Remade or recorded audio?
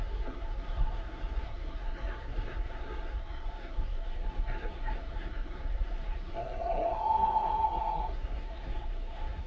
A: remade